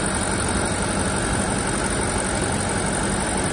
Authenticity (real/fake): real